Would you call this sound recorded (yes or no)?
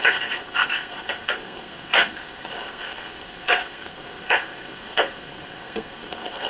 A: no